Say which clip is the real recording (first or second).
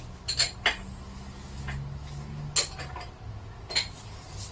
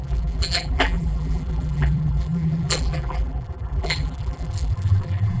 first